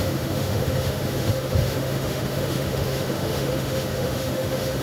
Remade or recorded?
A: remade